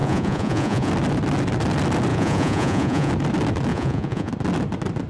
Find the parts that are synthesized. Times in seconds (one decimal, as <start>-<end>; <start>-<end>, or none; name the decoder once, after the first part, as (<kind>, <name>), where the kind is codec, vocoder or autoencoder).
0.0-0.9 (vocoder, Vocos); 2.1-3.1; 3.7-4.3